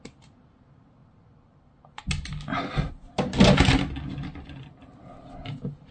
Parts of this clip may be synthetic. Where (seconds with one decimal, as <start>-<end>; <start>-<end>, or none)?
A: none